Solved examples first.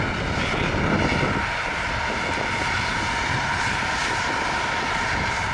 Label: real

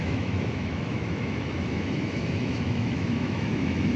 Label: fake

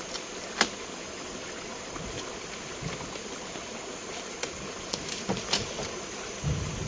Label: real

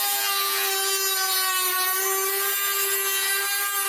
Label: real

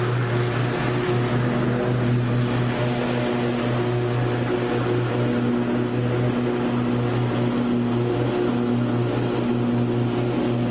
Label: real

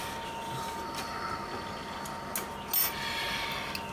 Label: real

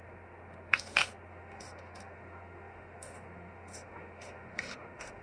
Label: fake